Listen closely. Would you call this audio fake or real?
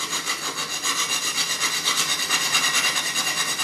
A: real